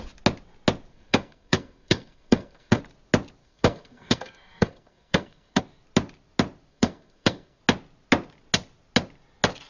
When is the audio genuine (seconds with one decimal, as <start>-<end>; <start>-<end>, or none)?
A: 0.0-0.9; 2.8-3.4; 5.6-6.7; 7.6-9.7